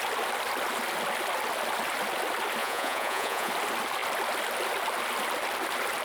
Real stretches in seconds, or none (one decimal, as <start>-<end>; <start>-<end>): 0.0-2.6; 3.5-6.0